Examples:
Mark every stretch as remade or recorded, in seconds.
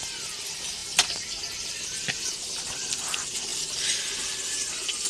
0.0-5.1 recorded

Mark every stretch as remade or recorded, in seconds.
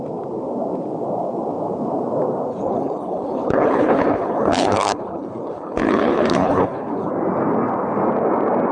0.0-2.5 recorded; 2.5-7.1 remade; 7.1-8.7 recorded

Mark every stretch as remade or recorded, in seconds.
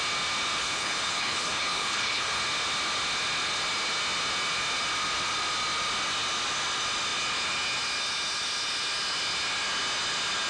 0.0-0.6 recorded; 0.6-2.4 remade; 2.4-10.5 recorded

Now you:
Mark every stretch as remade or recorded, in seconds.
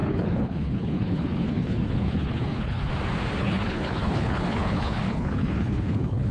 0.0-2.9 remade; 2.9-3.4 recorded; 3.4-6.3 remade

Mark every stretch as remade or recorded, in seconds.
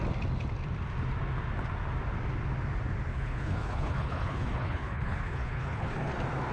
0.0-3.1 recorded; 3.1-6.1 remade; 6.1-6.5 recorded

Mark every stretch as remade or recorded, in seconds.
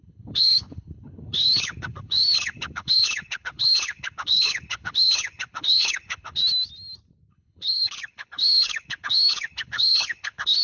0.0-6.4 remade; 6.4-7.3 recorded; 7.3-10.6 remade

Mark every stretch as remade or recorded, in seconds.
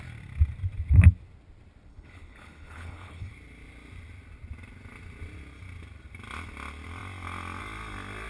0.0-1.9 recorded; 1.9-3.3 remade; 3.3-8.3 recorded